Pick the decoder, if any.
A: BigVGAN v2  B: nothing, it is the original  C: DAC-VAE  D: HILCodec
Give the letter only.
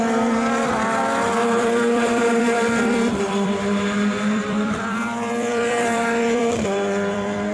A